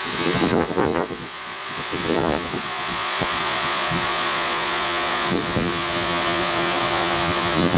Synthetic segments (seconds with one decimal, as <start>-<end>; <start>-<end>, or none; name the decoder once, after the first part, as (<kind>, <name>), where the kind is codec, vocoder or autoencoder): 0.0-7.8 (vocoder, Vocos)